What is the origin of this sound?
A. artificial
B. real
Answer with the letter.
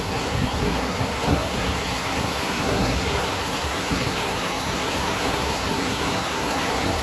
A